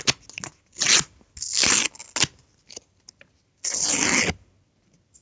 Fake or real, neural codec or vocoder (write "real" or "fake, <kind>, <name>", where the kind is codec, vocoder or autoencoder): real